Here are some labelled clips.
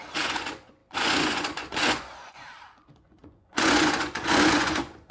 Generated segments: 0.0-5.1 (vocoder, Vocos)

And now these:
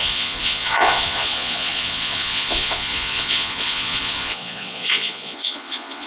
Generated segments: 0.0-6.1 (vocoder, Vocos)

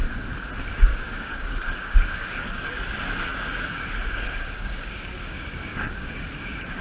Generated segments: 0.9-2.7 (codec, DAC); 3.3-6.8

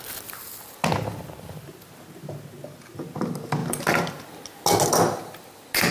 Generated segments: none

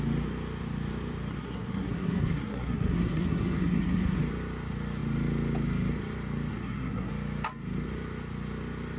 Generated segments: 1.3-4.2 (codec, SNAC); 6.5-7.1

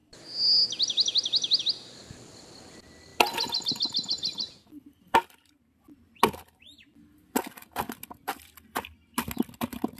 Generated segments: none